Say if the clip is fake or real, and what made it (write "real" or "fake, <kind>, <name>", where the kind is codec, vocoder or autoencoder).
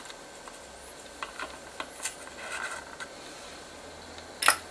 real